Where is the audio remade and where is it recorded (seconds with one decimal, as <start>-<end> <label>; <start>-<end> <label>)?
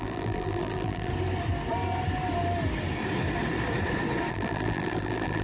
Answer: 0.0-1.1 remade; 1.1-4.3 recorded; 4.3-5.4 remade